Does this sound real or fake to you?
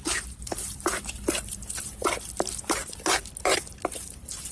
fake